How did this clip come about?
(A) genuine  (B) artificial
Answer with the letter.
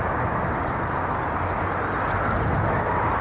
A